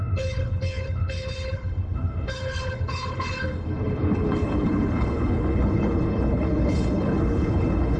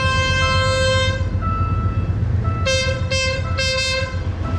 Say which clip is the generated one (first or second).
first